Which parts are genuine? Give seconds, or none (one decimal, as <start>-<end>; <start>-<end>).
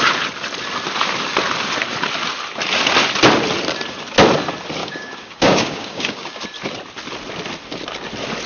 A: 0.0-4.8; 6.4-8.5